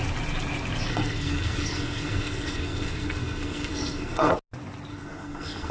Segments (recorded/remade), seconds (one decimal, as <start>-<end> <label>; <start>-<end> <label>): 0.0-0.9 recorded; 0.9-4.3 remade; 4.3-4.9 recorded; 4.9-5.7 remade